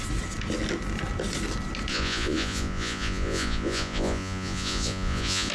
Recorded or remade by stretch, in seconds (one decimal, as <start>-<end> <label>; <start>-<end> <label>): 0.0-1.9 recorded; 1.9-5.5 remade